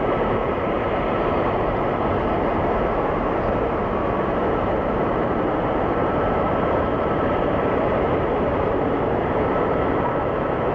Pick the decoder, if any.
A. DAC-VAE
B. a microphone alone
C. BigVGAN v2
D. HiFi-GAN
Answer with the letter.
C